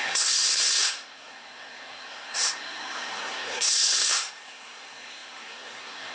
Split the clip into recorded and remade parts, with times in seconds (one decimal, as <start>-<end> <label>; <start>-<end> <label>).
0.0-6.1 remade